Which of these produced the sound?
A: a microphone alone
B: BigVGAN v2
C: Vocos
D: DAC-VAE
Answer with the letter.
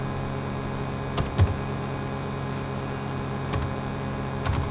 A